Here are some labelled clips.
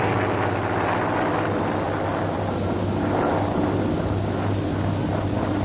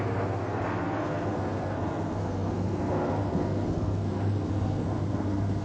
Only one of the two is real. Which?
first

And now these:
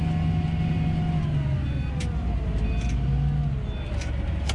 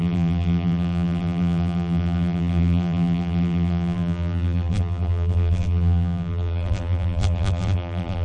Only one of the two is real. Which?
first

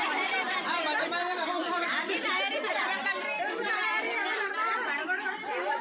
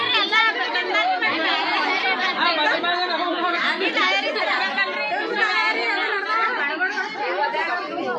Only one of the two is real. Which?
second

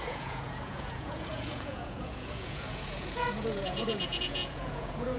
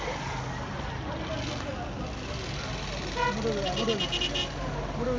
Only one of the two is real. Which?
second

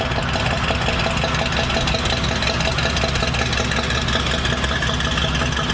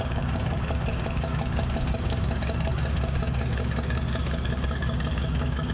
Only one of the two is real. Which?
first